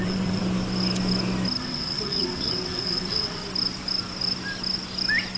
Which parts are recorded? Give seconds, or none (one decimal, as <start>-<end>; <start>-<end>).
0.4-1.6; 3.4-5.4